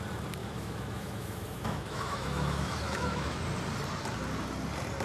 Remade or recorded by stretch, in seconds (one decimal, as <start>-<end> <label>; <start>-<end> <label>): 0.0-0.4 recorded; 0.4-3.4 remade; 3.4-5.0 recorded